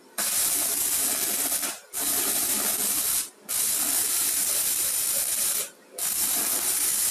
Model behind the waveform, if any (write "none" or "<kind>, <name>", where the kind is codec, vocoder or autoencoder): none